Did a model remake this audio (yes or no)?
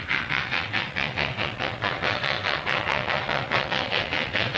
yes